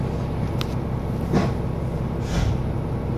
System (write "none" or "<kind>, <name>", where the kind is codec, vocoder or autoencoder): none